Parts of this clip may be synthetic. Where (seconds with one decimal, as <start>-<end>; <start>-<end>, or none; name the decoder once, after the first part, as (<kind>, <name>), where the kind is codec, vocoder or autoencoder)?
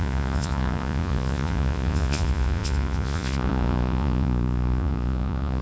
0.0-5.6 (vocoder, Vocos)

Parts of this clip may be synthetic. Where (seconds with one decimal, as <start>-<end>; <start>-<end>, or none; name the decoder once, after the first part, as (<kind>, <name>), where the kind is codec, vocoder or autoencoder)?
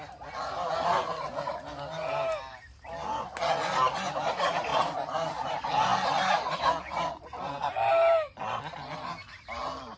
none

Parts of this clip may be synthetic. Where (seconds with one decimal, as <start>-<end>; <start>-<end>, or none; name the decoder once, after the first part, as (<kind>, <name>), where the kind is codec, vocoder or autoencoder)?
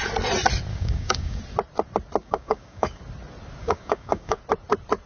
0.7-1.4 (codec, DAC); 2.2-3.0; 3.6-4.4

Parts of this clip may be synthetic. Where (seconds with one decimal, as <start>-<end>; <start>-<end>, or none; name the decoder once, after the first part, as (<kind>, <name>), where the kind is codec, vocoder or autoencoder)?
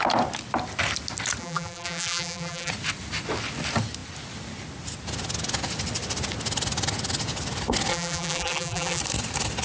1.4-2.7 (vocoder, BigVGAN v2); 7.9-9.0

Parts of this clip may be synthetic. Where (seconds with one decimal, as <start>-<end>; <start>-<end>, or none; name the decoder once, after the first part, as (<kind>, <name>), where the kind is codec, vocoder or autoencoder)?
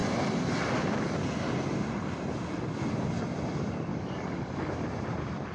3.9-4.8 (codec, DAC)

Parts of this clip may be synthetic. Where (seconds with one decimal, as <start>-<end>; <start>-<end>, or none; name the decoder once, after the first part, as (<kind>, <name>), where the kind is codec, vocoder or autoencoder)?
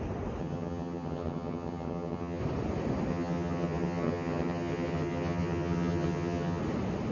0.4-2.4 (vocoder, HiFi-GAN); 3.1-6.6